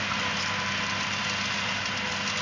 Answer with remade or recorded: recorded